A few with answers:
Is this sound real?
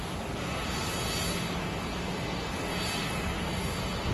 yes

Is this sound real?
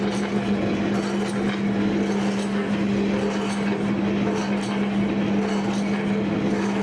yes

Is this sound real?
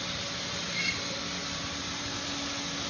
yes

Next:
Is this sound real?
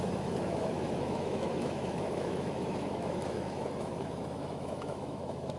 no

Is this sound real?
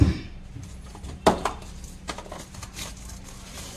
yes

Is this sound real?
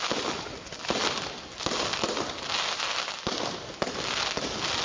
yes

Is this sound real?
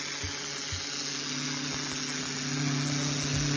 yes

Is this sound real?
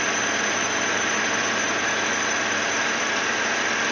yes